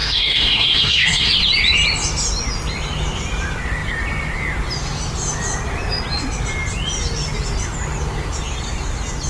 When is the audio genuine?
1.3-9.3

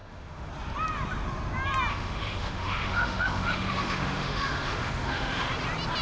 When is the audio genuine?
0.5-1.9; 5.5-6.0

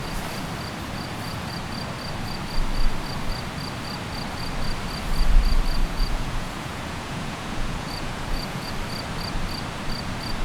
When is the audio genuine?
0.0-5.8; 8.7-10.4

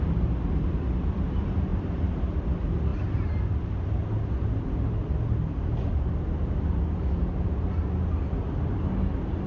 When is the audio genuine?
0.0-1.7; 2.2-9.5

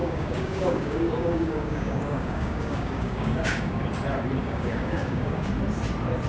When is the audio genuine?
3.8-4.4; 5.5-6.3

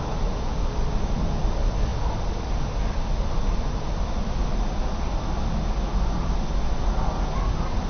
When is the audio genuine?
0.0-7.9